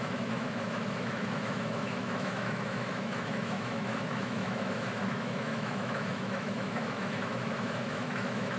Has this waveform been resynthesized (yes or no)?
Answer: yes